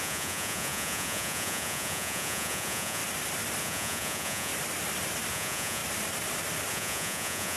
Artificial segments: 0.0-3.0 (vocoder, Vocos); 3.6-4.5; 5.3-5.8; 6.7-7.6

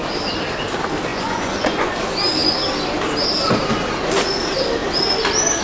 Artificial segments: 1.1-1.9 (vocoder, Vocos)

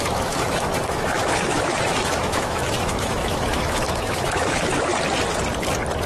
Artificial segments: 0.0-4.9 (autoencoder, DAC-VAE)

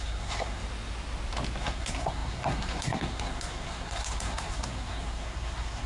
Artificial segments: 0.0-0.6 (codec, SNAC); 1.6-5.9

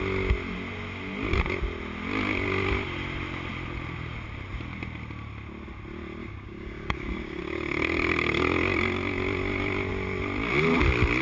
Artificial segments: 6.2-7.4 (codec, DAC)

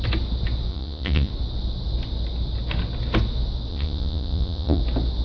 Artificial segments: 0.7-1.3 (vocoder, Vocos); 3.7-4.8